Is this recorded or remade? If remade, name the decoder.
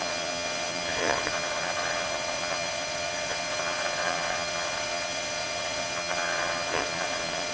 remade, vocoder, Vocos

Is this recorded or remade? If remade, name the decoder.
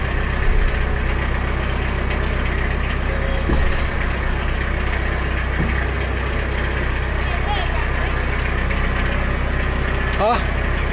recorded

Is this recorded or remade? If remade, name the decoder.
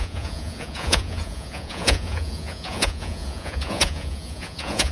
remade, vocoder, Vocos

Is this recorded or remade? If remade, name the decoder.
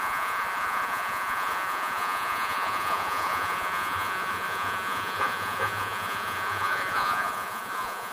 remade, vocoder, Vocos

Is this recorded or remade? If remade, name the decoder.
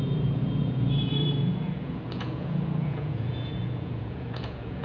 remade, vocoder, Vocos